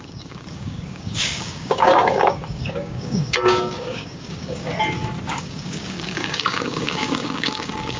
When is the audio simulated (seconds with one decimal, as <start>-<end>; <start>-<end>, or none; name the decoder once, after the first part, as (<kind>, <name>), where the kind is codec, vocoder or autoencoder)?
0.0-4.7 (codec, DAC); 5.3-8.0